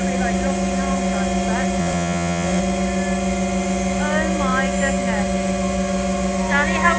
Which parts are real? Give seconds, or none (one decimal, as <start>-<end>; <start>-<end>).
0.0-1.8; 2.6-7.0